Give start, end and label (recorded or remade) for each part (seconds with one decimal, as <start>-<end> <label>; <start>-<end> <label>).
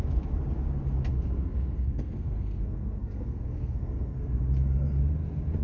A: 0.0-1.1 recorded; 1.1-4.4 remade; 4.4-5.6 recorded